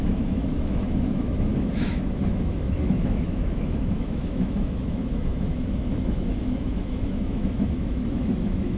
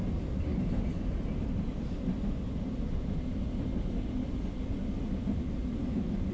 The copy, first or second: first